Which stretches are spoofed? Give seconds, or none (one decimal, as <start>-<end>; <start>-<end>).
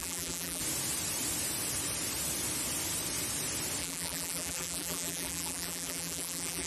0.0-0.6; 3.8-6.7